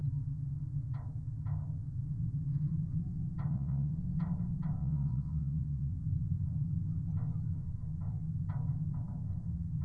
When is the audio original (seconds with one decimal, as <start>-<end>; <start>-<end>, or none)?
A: 0.0-3.5; 4.0-4.8; 5.9-9.8